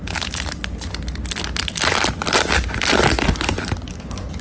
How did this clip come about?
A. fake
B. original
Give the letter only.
B